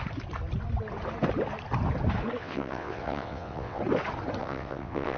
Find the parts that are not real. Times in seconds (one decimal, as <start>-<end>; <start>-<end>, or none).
2.4-3.8; 4.4-5.2